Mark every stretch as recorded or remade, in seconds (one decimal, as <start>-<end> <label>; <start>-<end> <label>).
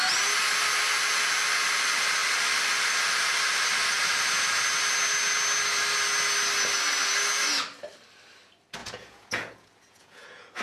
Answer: 0.0-8.8 recorded; 8.8-10.6 remade